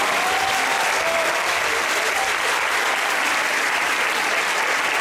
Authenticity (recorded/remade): recorded